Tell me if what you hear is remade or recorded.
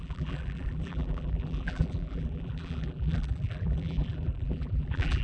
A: remade